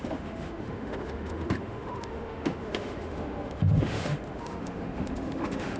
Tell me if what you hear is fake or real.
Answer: fake